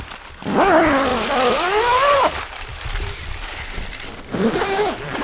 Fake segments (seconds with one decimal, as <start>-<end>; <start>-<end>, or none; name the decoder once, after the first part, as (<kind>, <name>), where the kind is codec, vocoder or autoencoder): 1.1-4.2 (vocoder, BigVGAN v2)